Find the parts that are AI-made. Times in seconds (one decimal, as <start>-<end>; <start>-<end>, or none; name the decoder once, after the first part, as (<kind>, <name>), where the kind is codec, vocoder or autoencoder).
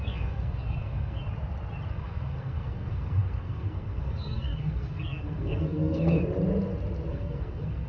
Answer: 0.0-1.2 (codec, SNAC); 1.9-6.2; 7.1-7.9